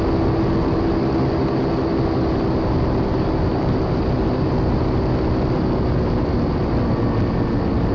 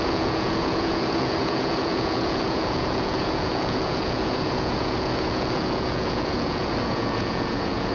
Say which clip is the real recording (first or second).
first